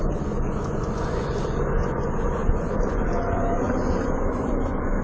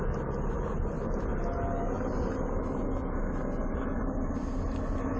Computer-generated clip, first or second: first